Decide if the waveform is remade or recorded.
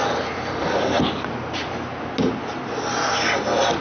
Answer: recorded